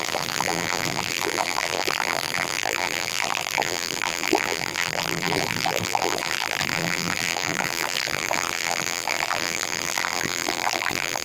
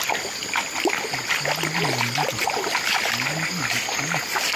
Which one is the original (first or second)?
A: second